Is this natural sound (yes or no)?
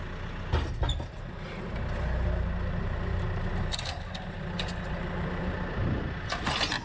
yes